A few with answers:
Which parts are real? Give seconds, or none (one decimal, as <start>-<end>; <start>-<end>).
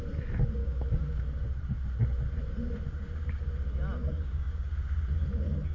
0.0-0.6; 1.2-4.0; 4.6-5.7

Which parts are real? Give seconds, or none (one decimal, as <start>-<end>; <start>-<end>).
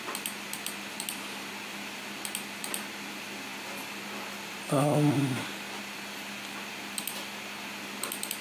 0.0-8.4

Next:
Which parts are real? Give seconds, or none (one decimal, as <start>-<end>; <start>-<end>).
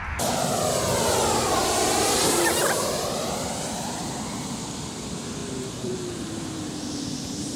0.0-1.6; 4.4-5.4